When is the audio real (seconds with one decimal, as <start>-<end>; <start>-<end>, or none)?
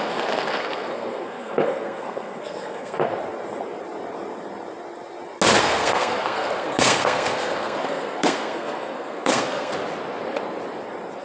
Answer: 3.1-5.6; 9.7-11.2